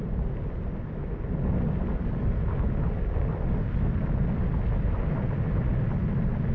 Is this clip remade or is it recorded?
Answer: recorded